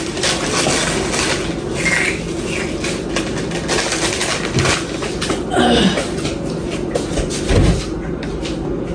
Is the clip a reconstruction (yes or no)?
no